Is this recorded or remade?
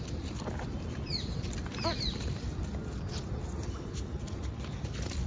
remade